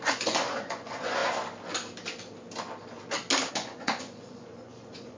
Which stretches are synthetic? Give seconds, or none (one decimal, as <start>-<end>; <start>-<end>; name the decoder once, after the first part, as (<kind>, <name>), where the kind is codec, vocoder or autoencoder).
0.0-1.2 (vocoder, Vocos); 3.5-5.2